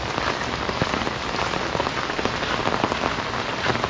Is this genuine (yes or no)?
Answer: yes